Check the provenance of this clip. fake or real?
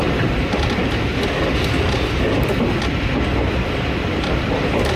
real